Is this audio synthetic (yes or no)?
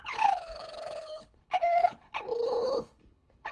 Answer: yes